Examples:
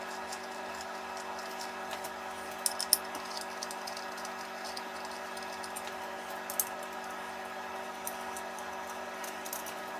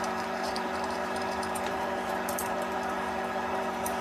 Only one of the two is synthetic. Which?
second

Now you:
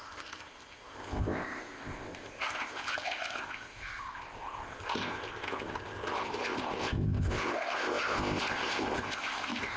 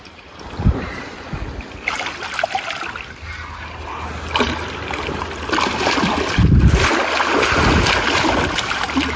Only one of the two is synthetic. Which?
first